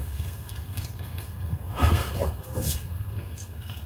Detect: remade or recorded remade